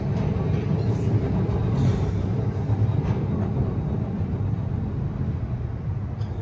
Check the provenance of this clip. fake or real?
real